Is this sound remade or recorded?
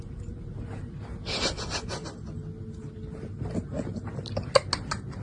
recorded